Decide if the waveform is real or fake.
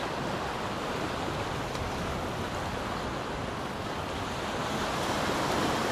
real